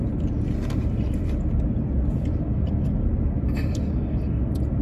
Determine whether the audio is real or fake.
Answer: real